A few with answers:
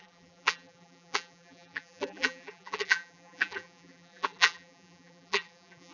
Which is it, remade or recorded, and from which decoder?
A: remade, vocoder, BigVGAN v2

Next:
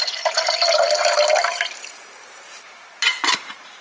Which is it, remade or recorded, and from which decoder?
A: remade, vocoder, BigVGAN v2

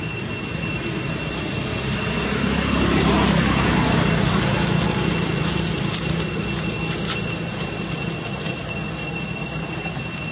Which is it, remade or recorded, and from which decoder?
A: recorded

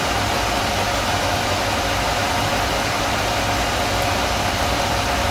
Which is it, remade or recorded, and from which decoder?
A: recorded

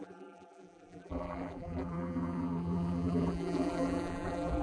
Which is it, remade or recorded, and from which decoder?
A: remade, vocoder, BigVGAN v2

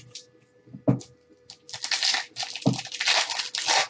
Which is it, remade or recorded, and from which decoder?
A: recorded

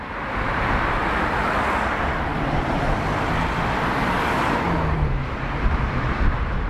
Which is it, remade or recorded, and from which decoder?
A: remade, vocoder, BigVGAN v2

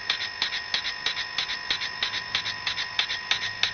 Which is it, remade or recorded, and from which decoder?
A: recorded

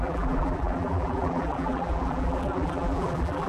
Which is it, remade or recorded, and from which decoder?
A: remade, vocoder, BigVGAN v2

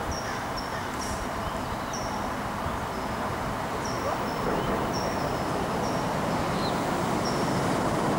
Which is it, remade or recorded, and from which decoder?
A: recorded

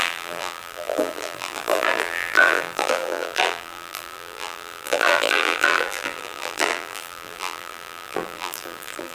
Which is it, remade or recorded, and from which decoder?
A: remade, vocoder, BigVGAN v2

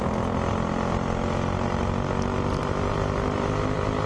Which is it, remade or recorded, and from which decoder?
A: remade, vocoder, BigVGAN v2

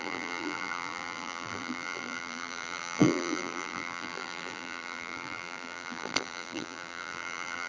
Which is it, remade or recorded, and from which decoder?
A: remade, vocoder, BigVGAN v2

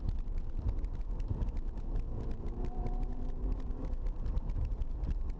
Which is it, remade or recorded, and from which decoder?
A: remade, vocoder, BigVGAN v2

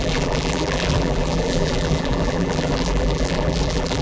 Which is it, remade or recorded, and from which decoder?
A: remade, vocoder, BigVGAN v2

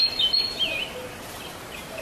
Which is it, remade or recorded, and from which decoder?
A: recorded